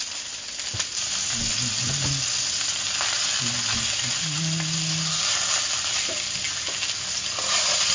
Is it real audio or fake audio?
real